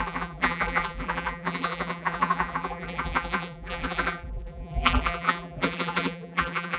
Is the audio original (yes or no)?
no